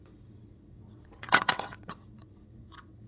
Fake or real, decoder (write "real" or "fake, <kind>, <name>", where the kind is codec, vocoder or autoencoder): fake, vocoder, WaveNeXt